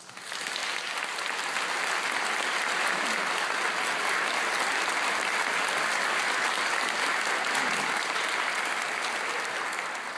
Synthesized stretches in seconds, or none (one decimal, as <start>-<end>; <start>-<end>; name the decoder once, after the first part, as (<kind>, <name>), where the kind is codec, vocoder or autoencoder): none